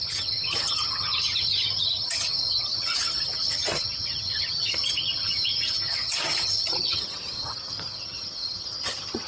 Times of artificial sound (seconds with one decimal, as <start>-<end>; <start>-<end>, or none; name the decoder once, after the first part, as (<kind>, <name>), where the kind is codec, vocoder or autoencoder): 0.0-9.3 (vocoder, HiFi-GAN)